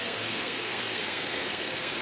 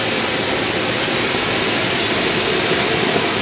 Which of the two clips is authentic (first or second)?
second